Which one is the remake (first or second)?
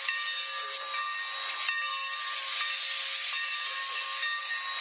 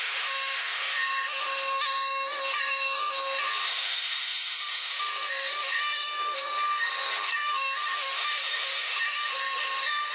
second